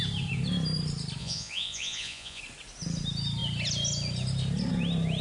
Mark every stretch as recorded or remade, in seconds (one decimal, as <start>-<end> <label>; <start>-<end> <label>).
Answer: 0.0-1.2 recorded; 1.2-2.4 remade; 2.4-5.2 recorded